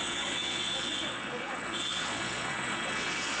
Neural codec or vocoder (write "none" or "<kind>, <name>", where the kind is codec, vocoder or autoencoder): vocoder, Vocos